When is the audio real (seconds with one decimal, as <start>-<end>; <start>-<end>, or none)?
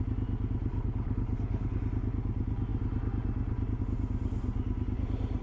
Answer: 0.0-0.7; 1.8-5.4